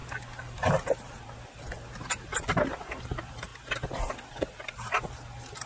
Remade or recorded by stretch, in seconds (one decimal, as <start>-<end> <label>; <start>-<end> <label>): 0.0-3.5 remade; 3.5-4.4 recorded; 4.4-5.7 remade